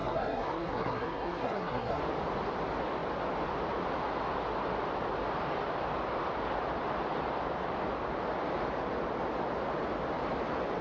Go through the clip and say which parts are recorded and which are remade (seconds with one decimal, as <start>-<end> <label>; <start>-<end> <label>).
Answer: 0.0-2.0 remade; 2.0-10.8 recorded